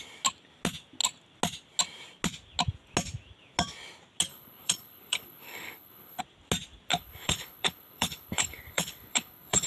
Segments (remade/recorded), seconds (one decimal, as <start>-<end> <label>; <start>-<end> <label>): 0.0-4.3 recorded; 4.3-6.2 remade; 6.2-6.9 recorded; 6.9-9.7 remade